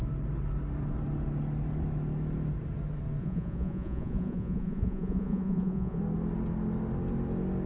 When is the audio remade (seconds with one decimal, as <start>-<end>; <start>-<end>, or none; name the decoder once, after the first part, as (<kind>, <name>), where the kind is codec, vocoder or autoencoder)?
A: 3.2-6.0 (vocoder, Vocos)

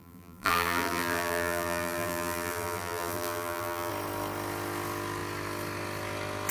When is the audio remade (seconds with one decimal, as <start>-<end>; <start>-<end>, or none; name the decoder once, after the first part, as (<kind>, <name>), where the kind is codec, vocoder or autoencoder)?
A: 0.0-3.9 (vocoder, BigVGAN v2)

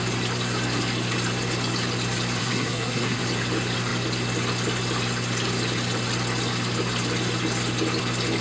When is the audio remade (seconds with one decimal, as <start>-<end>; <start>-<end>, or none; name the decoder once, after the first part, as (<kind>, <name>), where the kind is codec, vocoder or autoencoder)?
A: 2.4-3.2 (codec, SNAC)